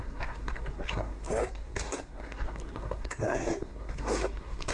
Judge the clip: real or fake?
fake